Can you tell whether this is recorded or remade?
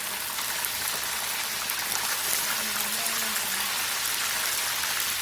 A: recorded